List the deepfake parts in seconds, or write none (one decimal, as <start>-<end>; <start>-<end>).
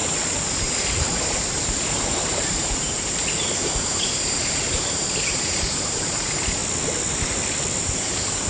0.5-6.6; 7.8-8.5